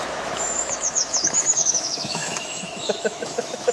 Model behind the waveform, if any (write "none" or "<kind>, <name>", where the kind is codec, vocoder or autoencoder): autoencoder, DAC-VAE